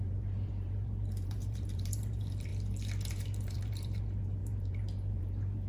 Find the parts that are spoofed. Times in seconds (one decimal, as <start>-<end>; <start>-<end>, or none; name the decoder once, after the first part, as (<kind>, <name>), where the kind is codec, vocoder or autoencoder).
0.0-2.5 (vocoder, BigVGAN v2); 3.1-5.7